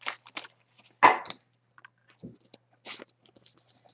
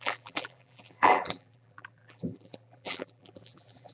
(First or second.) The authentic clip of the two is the first